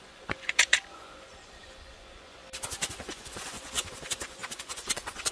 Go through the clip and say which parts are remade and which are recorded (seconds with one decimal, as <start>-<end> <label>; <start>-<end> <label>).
0.0-2.4 remade; 2.4-2.9 recorded; 2.9-5.3 remade